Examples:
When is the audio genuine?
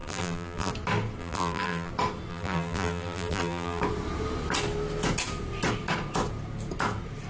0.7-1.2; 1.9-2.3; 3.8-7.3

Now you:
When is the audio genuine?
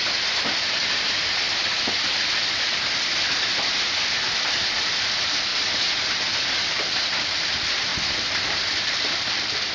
5.5-6.8; 7.9-8.7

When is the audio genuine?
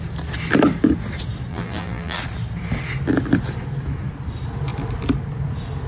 0.0-1.5; 2.2-5.9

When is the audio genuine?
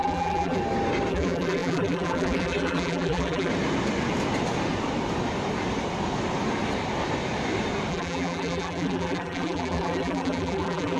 0.6-1.1; 3.5-7.9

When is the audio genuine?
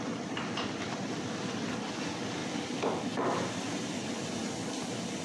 2.4-3.6; 4.4-5.2